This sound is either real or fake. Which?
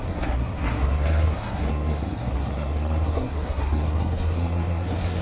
fake